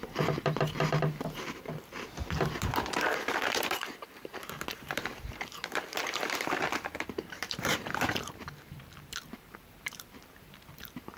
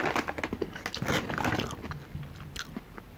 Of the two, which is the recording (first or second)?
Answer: second